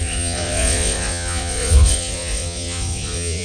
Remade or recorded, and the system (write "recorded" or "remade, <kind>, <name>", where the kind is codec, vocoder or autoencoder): remade, vocoder, Vocos